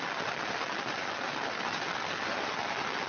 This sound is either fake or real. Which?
real